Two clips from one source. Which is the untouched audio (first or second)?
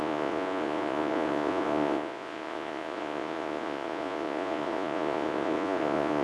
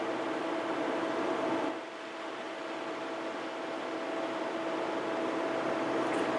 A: second